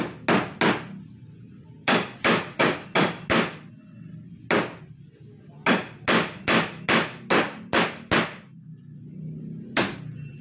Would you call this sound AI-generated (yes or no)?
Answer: no